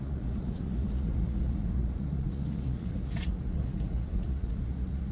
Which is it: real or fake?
fake